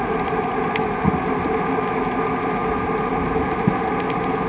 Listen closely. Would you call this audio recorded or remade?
recorded